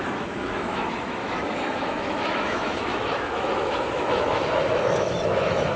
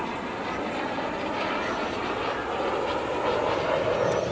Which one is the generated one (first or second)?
first